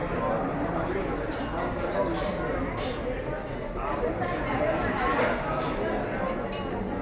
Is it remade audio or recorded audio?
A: recorded